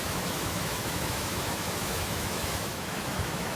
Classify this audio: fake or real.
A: fake